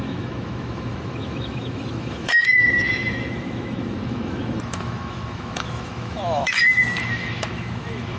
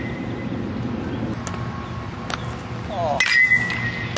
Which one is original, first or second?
second